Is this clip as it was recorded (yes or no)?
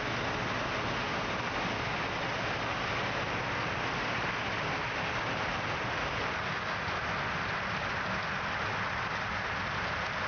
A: yes